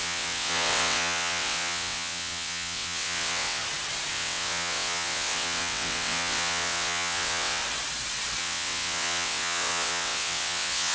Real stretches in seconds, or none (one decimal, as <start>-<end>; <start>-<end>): 3.6-4.1; 7.6-8.4